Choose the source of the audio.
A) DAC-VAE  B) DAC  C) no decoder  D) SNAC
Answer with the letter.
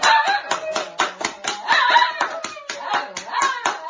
C